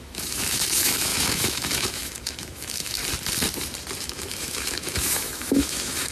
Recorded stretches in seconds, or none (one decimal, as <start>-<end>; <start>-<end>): 3.0-4.0